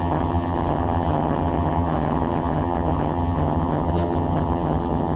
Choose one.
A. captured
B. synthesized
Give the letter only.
B